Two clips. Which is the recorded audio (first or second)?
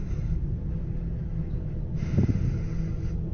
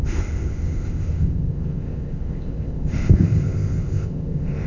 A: first